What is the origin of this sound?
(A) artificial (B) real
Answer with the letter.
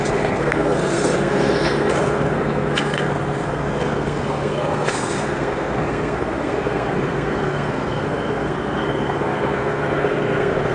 A